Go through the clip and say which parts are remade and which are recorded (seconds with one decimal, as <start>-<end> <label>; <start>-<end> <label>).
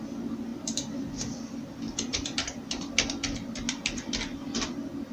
0.0-0.5 recorded; 0.5-1.2 remade; 1.2-2.1 recorded; 2.1-2.7 remade; 2.7-5.1 recorded